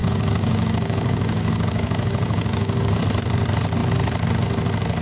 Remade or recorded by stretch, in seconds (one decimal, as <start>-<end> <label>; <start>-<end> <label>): 0.0-3.0 remade; 3.0-5.0 recorded